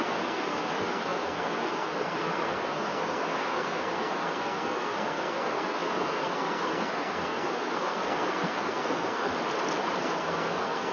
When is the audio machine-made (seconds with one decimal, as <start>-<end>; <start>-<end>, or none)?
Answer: 0.0-9.3; 10.0-10.9